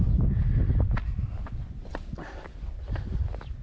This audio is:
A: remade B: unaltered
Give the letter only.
B